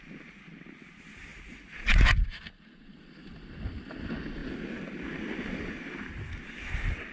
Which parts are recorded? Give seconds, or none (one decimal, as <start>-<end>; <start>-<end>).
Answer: 0.0-1.3; 2.4-7.1